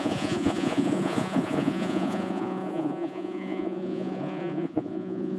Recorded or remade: remade